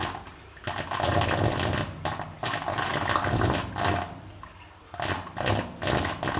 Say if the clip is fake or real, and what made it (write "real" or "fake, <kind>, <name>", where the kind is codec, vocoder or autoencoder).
real